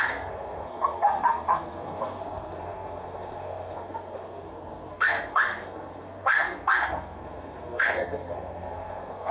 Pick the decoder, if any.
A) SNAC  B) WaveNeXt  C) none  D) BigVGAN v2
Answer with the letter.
A